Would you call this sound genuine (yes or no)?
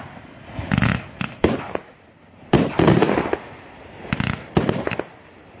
yes